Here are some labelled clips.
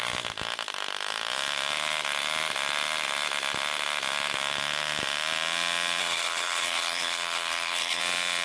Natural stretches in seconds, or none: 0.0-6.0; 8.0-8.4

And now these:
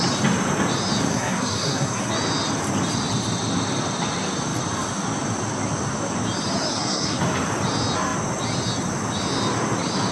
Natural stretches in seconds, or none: 0.0-1.1; 2.1-6.7; 7.2-10.1

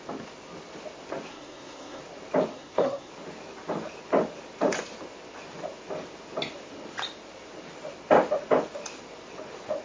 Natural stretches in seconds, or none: 0.0-1.3; 2.0-2.5; 3.1-9.8